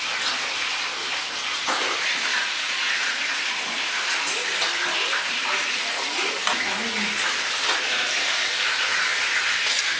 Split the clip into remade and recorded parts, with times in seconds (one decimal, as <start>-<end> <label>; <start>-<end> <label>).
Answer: 0.0-2.3 recorded; 2.3-3.3 remade; 3.3-10.0 recorded